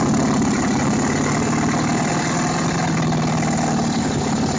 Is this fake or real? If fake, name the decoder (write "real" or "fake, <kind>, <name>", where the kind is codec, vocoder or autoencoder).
real